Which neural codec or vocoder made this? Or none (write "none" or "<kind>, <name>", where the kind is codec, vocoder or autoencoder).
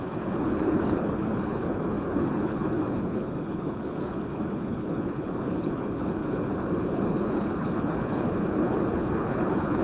codec, HILCodec